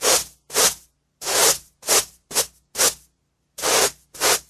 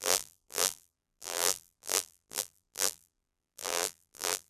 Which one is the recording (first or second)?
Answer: first